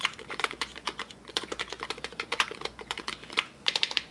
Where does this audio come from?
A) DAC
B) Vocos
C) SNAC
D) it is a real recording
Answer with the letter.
B